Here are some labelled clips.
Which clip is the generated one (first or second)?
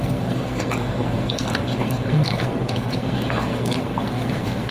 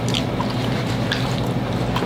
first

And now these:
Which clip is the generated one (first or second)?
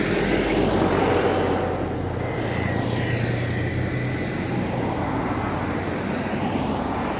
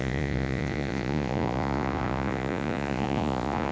second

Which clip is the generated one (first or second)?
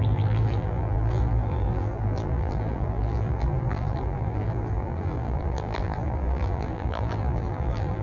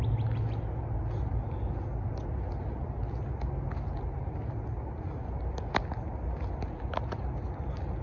first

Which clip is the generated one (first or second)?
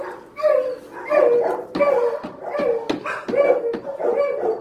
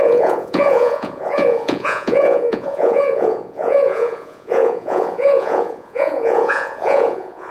second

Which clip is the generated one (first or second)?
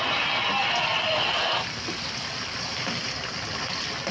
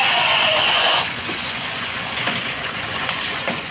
second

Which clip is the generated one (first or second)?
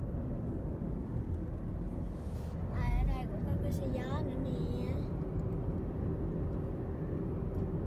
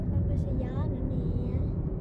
second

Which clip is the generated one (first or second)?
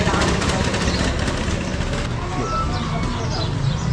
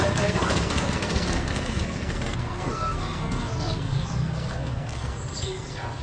second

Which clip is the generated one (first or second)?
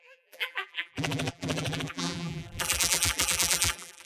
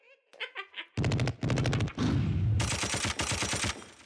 first